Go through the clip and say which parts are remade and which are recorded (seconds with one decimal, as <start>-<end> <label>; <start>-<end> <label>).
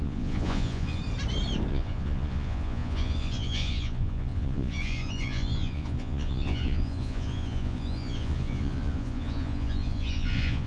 0.0-1.0 remade; 1.0-1.7 recorded; 1.7-10.7 remade